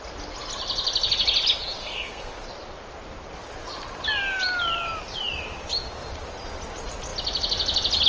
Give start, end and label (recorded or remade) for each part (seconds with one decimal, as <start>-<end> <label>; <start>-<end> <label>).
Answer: 0.0-1.8 recorded; 1.8-2.3 remade; 2.3-8.1 recorded